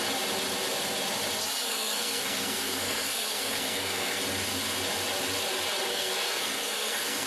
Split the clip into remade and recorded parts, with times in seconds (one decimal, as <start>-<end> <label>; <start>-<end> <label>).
0.0-1.7 recorded; 1.7-4.2 remade; 4.2-5.9 recorded; 5.9-7.3 remade